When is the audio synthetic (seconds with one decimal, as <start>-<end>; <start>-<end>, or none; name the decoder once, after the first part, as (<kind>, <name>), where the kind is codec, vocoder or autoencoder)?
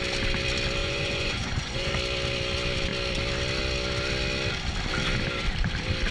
0.8-1.9 (vocoder, Vocos)